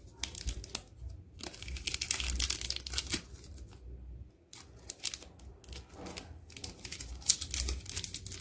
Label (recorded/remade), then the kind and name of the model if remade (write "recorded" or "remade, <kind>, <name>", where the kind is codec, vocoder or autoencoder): recorded